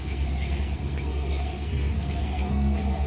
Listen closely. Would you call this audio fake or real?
fake